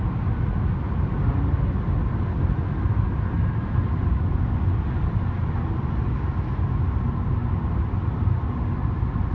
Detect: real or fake real